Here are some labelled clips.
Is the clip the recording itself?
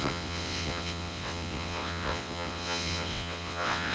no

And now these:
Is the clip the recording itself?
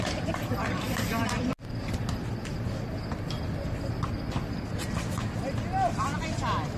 yes